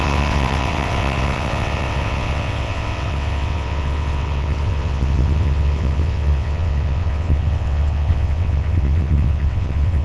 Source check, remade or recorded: remade